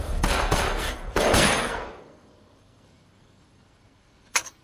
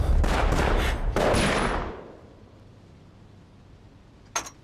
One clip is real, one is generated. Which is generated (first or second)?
first